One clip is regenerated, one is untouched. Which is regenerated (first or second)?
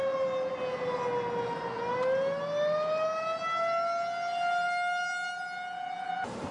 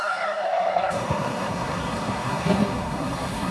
second